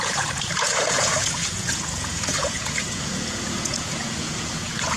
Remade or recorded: remade